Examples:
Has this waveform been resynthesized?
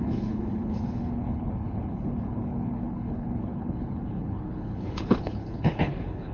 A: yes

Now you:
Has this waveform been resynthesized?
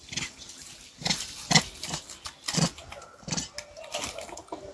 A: no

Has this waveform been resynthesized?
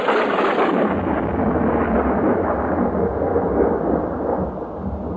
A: no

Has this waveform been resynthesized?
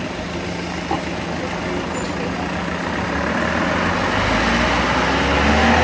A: no